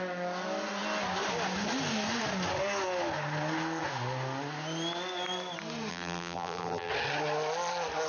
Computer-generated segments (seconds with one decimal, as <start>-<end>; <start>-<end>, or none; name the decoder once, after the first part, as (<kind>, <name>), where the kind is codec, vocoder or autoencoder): 5.9-6.9 (vocoder, BigVGAN v2)

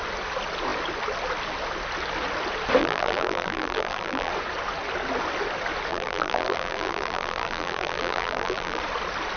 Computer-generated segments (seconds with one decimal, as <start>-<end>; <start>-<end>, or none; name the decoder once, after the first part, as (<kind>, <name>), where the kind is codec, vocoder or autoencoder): 2.8-4.3 (vocoder, BigVGAN v2); 5.9-8.8

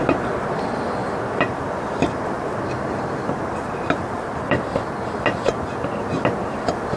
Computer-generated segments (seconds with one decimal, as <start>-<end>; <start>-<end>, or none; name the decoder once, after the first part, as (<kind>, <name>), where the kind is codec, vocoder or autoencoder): 1.0-5.2 (vocoder, BigVGAN v2)

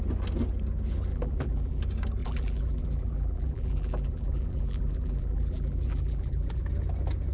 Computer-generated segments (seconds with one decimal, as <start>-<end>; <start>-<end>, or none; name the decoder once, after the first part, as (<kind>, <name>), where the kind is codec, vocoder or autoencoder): 1.1-1.8 (vocoder, BigVGAN v2); 2.2-6.6

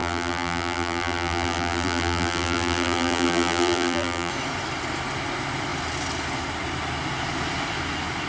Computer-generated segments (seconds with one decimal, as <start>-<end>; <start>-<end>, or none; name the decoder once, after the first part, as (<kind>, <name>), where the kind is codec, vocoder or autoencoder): 0.0-4.3 (vocoder, BigVGAN v2)

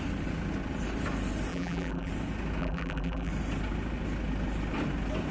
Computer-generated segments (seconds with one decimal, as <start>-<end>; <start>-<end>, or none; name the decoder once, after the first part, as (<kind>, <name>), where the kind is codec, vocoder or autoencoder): 1.5-2.1 (vocoder, BigVGAN v2); 2.6-3.3

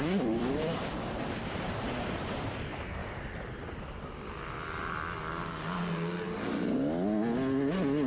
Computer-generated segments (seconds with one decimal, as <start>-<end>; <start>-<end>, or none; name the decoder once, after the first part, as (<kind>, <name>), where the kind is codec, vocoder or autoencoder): 0.0-3.0 (vocoder, BigVGAN v2)

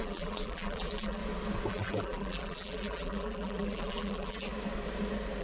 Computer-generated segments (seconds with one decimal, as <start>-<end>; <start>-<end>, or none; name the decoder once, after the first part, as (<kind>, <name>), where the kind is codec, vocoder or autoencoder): 0.0-1.2 (vocoder, BigVGAN v2); 1.7-4.5